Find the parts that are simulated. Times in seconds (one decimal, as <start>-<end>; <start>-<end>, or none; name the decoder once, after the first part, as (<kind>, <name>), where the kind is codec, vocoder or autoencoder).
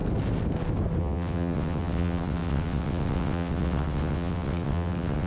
1.0-5.3 (vocoder, WaveNeXt)